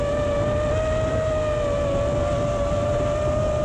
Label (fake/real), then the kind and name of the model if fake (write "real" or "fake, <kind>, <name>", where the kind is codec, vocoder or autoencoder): real